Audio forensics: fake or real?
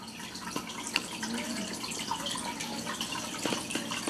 real